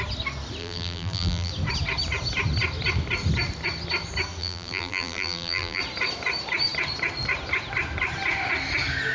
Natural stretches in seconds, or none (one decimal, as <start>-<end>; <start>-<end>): 0.0-0.6; 1.5-4.4; 5.8-9.1